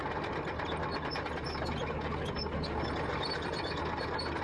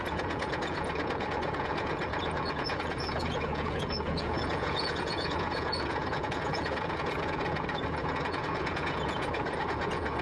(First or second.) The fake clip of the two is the second